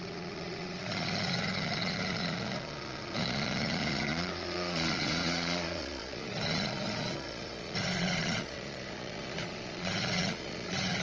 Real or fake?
fake